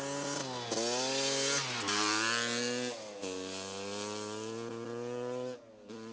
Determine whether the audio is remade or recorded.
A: recorded